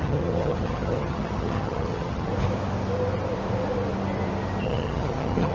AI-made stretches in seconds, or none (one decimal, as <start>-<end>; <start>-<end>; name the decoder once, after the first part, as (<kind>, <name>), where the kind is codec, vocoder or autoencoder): 0.0-2.3 (vocoder, HiFi-GAN); 4.6-5.5